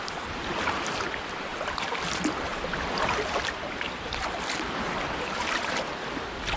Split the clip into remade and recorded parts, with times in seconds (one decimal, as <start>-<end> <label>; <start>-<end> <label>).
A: 0.0-6.6 recorded